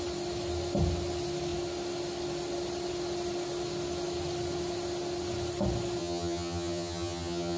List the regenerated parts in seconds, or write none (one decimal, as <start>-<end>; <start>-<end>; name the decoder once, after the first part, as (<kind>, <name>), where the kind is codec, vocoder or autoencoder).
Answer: 6.0-7.6 (vocoder, HiFi-GAN)

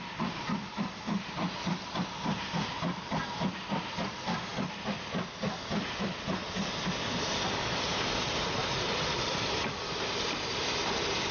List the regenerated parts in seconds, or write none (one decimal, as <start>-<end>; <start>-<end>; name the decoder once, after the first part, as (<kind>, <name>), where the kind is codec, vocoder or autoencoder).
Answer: none

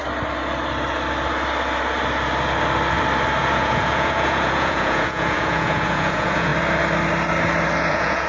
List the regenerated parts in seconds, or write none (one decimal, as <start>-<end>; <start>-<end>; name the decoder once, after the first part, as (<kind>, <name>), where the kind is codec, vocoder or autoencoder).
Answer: 3.4-6.5 (vocoder, Vocos); 7.9-8.3

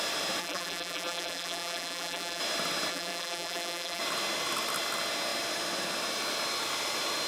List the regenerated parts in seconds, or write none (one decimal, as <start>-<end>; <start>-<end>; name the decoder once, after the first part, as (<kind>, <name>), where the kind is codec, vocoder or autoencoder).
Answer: 0.4-2.4 (vocoder, BigVGAN v2); 2.9-4.0